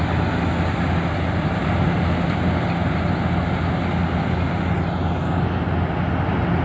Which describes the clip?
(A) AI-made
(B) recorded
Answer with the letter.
B